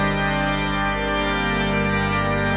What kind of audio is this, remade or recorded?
recorded